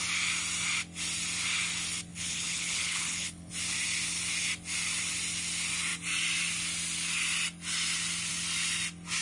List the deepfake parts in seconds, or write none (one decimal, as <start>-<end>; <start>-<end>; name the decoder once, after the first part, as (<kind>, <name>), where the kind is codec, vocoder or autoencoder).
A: 2.1-3.5 (codec, HILCodec)